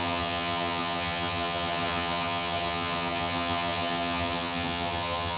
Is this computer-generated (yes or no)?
yes